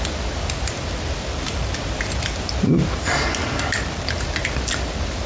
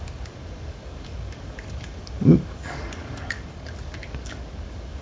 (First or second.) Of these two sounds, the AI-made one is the second